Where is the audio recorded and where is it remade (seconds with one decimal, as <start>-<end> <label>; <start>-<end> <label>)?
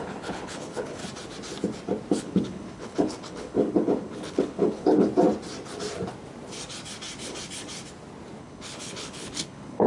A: 0.0-1.0 remade; 1.0-2.2 recorded; 2.2-5.1 remade; 5.1-8.4 recorded; 8.4-9.9 remade